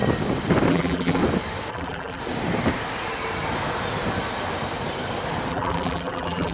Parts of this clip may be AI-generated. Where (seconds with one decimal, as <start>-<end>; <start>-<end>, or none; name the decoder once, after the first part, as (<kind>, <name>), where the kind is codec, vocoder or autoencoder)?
0.7-1.2 (vocoder, BigVGAN v2); 1.7-2.2; 5.5-6.5